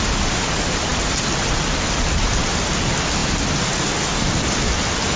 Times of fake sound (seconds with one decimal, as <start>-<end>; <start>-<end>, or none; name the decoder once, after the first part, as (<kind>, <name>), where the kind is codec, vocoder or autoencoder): none